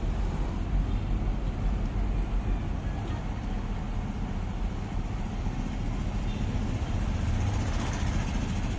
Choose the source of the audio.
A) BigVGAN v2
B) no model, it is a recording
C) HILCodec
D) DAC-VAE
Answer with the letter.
B